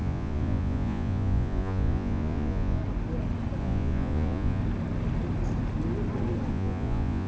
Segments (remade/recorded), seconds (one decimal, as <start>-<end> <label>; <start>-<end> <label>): 0.0-2.8 remade; 2.8-3.6 recorded; 3.6-4.6 remade; 4.6-6.5 recorded; 6.5-7.3 remade